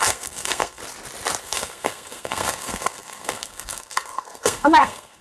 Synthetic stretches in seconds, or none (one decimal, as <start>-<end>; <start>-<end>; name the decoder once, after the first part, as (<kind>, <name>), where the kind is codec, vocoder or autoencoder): 0.0-0.8 (codec, SNAC); 1.4-5.2